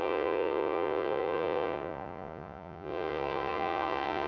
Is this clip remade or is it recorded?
remade